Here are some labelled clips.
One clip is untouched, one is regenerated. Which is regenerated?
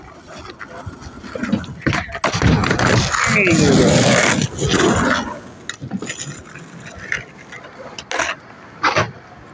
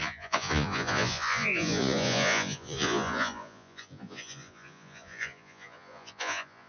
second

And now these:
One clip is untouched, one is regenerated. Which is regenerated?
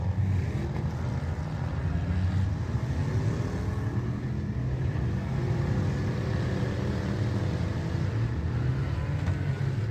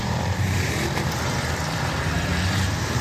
second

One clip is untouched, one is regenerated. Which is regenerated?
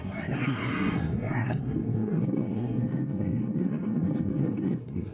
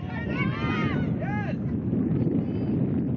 first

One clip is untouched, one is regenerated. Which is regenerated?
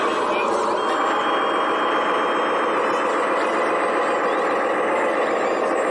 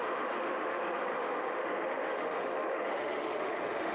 second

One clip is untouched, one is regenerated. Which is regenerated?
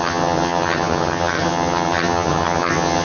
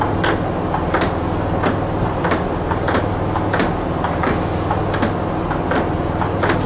first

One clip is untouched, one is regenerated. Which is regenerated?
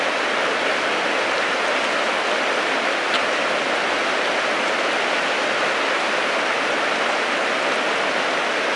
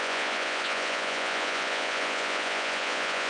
second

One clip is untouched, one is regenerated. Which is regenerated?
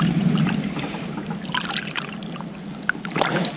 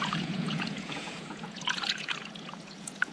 second